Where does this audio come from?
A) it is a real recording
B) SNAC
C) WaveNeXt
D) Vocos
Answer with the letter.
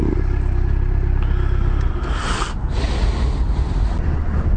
A